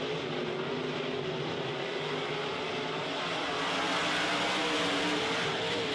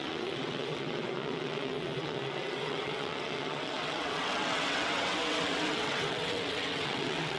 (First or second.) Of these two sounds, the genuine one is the first